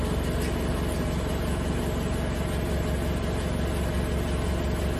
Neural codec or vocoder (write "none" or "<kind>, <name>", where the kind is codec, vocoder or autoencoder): none